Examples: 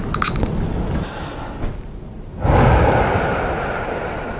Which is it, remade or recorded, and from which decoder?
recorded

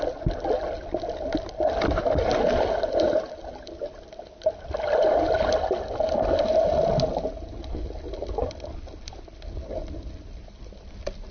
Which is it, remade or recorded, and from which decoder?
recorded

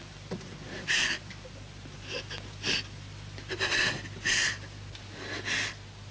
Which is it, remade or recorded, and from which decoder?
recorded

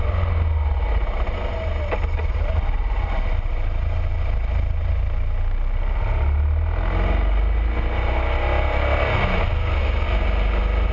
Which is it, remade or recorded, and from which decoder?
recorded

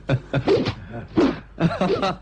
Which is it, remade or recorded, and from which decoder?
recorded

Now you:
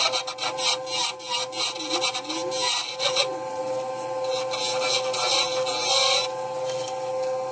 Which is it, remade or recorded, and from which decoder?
recorded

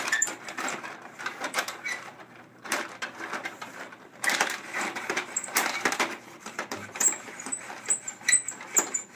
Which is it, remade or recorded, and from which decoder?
remade, vocoder, BigVGAN v2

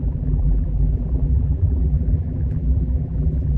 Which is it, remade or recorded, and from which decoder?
remade, vocoder, BigVGAN v2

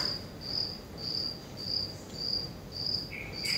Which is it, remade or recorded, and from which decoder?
recorded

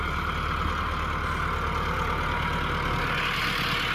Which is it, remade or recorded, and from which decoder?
recorded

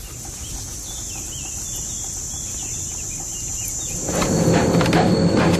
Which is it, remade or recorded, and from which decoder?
recorded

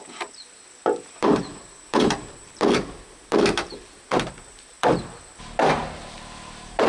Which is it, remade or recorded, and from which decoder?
remade, vocoder, BigVGAN v2